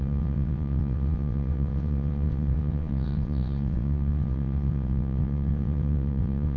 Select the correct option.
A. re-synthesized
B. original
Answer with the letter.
A